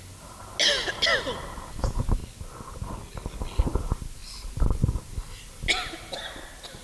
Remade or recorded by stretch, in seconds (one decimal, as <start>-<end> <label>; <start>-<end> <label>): 0.0-6.8 recorded